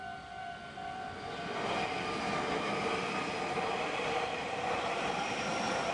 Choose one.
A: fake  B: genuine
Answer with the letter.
B